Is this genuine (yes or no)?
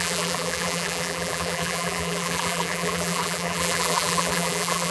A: no